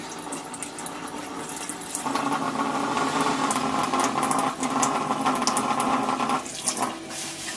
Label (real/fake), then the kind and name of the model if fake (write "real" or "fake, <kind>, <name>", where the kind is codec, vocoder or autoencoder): real